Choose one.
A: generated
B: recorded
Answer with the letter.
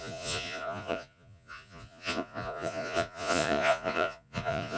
A